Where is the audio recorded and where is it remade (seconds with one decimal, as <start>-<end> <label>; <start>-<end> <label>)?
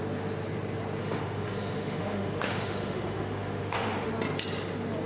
0.0-1.0 recorded; 1.0-4.1 remade; 4.1-5.1 recorded